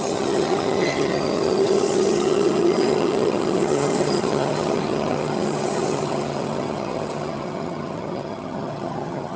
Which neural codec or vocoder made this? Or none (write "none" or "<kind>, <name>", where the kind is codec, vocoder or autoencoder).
vocoder, HiFi-GAN